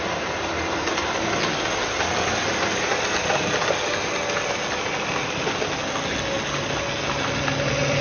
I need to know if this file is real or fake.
real